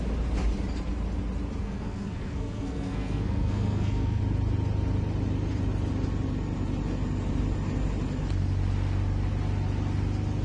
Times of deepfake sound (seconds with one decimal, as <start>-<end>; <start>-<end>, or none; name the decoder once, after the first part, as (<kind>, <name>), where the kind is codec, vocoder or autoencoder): 1.6-4.2 (codec, SNAC)